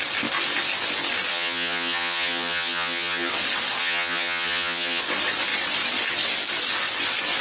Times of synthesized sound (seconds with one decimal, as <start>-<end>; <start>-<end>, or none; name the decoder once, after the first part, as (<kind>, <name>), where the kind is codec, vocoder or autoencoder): 1.3-3.3 (vocoder, HiFi-GAN); 3.8-5.0